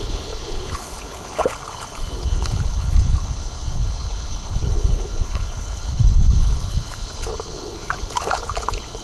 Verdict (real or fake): fake